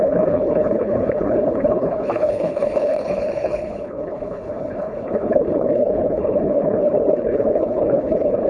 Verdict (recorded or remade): remade